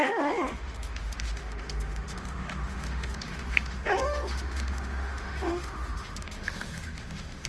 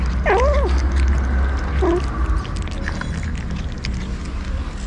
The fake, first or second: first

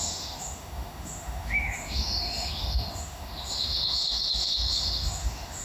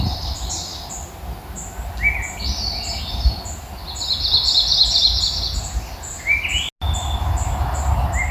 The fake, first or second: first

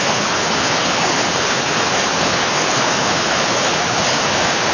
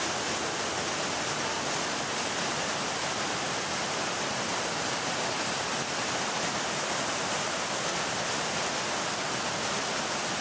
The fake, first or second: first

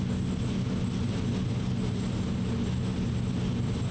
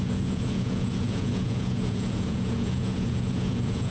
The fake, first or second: second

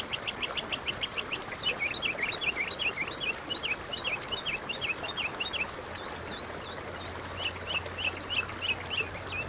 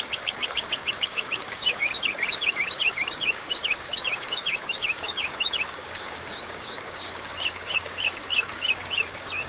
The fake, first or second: second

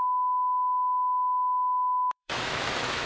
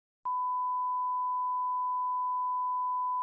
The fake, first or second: first